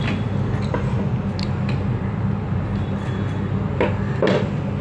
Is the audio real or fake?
real